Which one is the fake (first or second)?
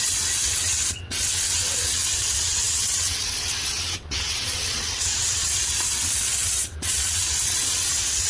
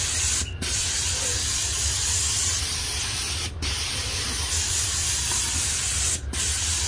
first